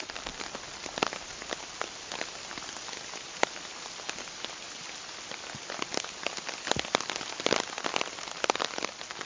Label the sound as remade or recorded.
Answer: recorded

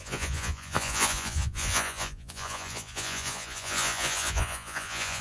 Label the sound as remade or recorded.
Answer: remade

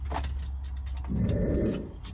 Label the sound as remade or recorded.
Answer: recorded